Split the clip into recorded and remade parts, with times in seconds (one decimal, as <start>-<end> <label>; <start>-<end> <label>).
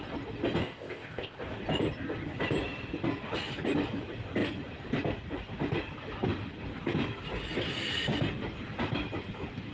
0.0-0.6 recorded; 0.6-1.4 remade; 1.4-9.7 recorded